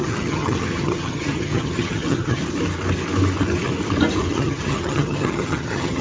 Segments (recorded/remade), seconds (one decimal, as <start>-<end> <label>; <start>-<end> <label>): 0.0-2.4 remade; 2.4-4.3 recorded; 4.3-6.0 remade

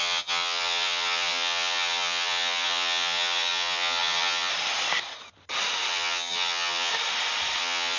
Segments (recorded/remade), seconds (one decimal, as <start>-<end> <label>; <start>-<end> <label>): 0.0-4.5 remade; 4.5-5.9 recorded; 5.9-6.9 remade; 6.9-7.6 recorded; 7.6-8.0 remade

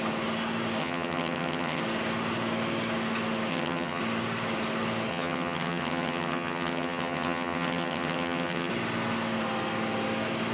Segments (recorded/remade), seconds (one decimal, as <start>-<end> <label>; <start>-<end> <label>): 0.0-0.8 recorded; 0.8-1.8 remade; 1.8-3.5 recorded; 3.5-4.0 remade; 4.0-5.1 recorded; 5.1-8.7 remade; 8.7-10.5 recorded

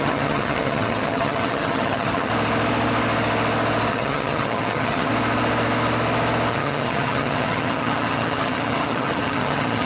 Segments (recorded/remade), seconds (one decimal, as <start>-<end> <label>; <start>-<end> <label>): 0.0-2.3 remade; 2.3-3.9 recorded; 3.9-5.1 remade; 5.1-6.5 recorded; 6.5-9.9 remade

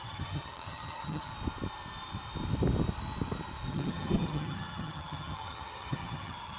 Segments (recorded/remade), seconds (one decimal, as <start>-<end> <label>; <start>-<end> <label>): 0.0-1.3 remade; 1.3-3.7 recorded; 3.7-6.6 remade

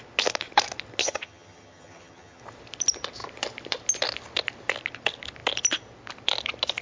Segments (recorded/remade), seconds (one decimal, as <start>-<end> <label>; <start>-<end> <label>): 0.0-1.0 recorded; 1.0-2.4 remade; 2.4-6.8 recorded

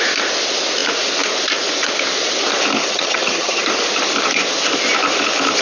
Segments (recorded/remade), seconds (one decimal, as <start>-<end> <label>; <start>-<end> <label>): 0.0-2.8 recorded; 2.8-3.6 remade; 3.6-5.6 recorded

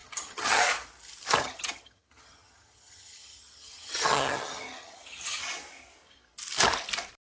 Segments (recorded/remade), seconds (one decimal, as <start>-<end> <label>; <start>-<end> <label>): 0.0-0.6 remade; 0.6-1.4 recorded; 1.4-5.4 remade; 5.4-7.4 recorded